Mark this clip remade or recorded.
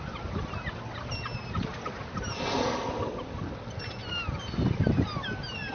recorded